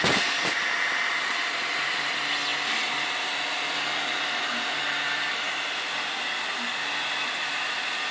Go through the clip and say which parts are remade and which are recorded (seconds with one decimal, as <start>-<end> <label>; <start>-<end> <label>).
0.0-8.1 recorded